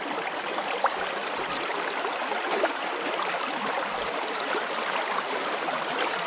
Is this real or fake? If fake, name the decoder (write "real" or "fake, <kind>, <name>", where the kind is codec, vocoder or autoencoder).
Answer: fake, vocoder, BigVGAN v2